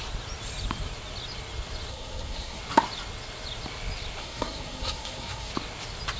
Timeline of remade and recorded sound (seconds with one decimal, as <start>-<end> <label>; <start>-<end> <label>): 0.0-1.9 recorded; 1.9-2.6 remade; 2.6-4.2 recorded; 4.2-5.5 remade; 5.5-6.2 recorded